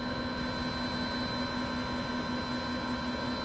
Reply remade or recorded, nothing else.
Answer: recorded